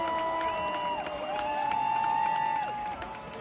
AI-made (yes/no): no